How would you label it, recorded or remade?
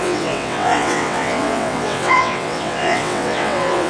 remade